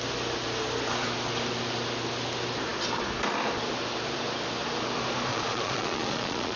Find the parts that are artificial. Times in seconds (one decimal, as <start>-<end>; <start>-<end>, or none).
5.3-6.6